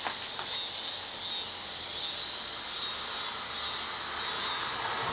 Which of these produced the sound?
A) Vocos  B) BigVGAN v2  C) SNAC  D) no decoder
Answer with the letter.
D